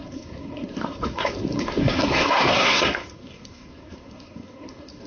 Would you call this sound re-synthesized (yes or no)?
yes